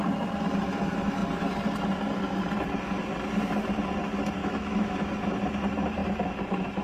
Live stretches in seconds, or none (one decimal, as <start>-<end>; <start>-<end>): 0.0-4.4; 5.1-6.8

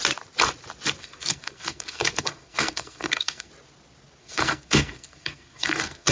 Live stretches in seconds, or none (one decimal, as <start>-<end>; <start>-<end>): 0.0-1.0; 3.5-4.2

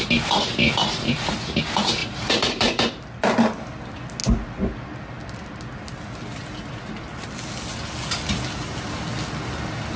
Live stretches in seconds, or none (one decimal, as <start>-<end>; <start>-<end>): 0.0-2.0; 2.9-10.0

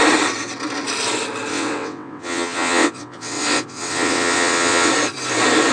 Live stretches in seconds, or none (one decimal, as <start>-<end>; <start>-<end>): 0.0-1.5; 4.9-5.7

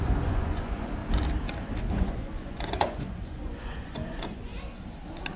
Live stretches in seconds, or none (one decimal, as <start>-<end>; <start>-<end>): 1.0-1.8; 4.5-5.4